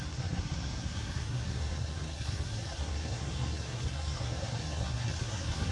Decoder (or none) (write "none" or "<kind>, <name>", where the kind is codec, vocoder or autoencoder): codec, SNAC